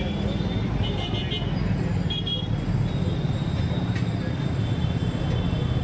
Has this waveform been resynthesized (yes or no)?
no